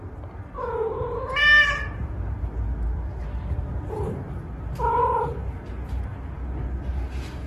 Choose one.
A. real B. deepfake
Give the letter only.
A